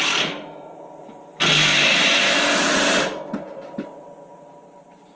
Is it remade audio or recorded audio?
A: remade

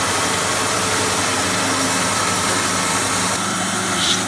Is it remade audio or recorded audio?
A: remade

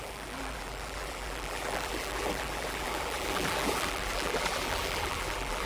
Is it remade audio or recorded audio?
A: remade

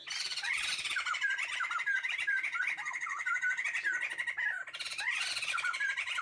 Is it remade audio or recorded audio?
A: remade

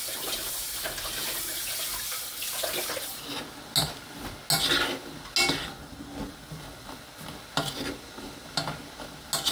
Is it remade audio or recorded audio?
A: recorded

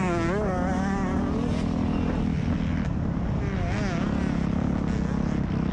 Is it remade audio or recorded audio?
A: recorded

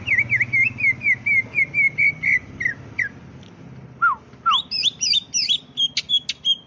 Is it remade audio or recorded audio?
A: recorded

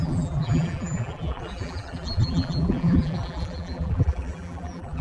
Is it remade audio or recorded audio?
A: remade